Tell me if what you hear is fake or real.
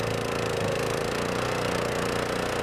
real